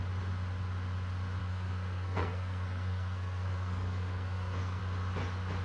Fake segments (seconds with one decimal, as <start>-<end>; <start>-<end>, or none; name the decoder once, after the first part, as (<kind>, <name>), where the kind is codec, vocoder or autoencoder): 1.4-4.8 (codec, SNAC)